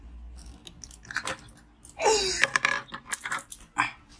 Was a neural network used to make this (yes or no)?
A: no